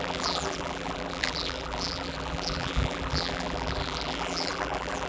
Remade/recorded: remade